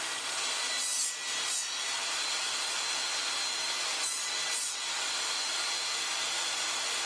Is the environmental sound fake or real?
real